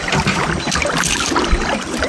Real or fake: fake